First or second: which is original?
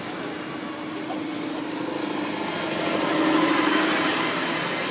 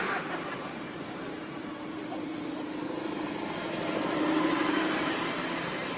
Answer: first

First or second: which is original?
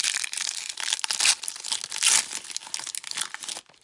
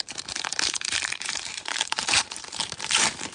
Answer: first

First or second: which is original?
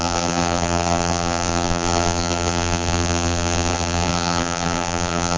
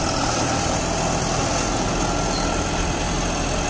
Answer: second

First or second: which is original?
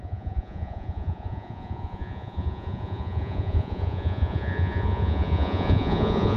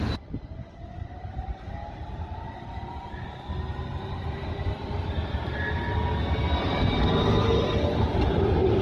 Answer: second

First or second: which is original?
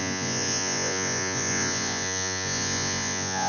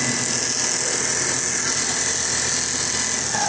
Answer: second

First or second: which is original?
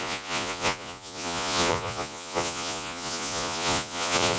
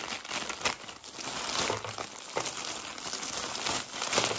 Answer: second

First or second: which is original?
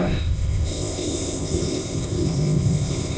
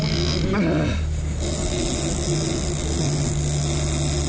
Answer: second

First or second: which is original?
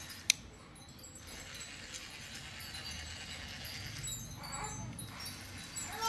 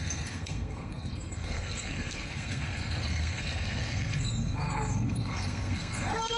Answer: first